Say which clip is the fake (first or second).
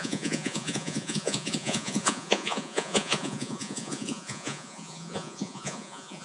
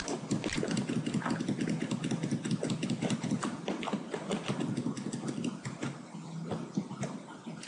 first